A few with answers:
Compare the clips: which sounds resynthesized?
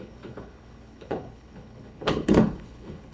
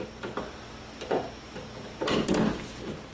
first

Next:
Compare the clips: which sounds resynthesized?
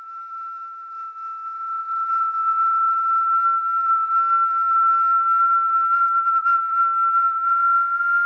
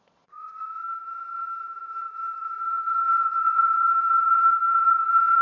second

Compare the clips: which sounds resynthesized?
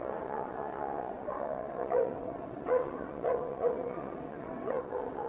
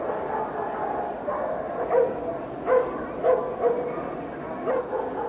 first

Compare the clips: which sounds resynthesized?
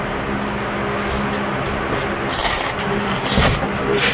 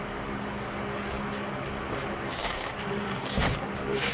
second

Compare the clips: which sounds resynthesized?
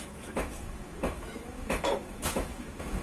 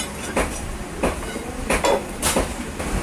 first